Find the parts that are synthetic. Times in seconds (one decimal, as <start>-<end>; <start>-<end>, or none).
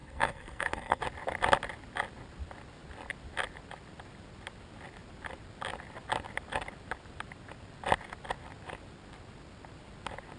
0.0-1.0